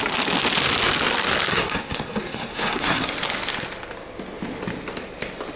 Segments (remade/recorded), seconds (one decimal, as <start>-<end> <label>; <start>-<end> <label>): 0.0-1.5 recorded; 1.5-3.1 remade; 3.1-5.6 recorded